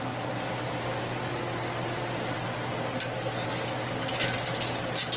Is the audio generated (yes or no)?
no